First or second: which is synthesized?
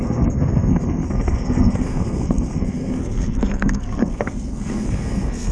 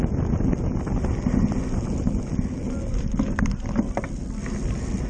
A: first